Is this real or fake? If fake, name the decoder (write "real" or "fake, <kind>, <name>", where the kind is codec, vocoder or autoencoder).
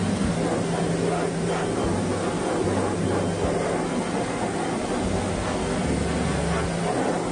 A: real